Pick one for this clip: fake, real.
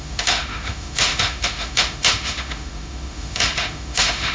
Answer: fake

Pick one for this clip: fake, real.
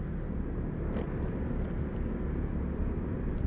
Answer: real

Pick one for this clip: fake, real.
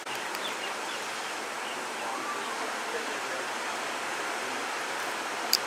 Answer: real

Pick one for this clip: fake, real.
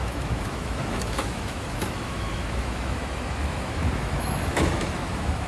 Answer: fake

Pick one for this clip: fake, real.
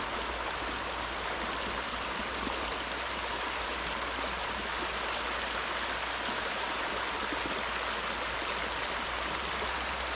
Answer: real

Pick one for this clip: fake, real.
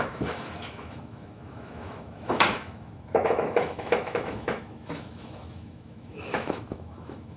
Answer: fake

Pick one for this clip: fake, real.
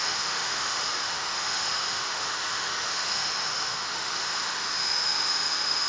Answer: fake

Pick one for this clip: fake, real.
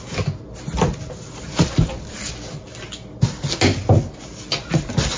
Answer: real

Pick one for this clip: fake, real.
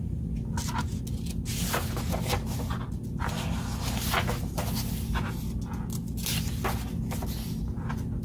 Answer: real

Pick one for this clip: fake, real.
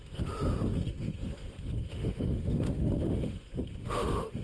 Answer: fake